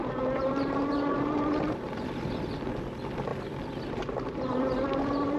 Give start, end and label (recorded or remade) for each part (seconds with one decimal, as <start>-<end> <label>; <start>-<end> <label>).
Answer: 0.0-5.4 recorded